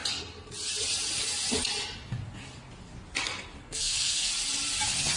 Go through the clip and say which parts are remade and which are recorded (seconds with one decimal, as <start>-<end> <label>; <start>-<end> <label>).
0.0-3.6 recorded; 3.6-4.3 remade; 4.3-5.2 recorded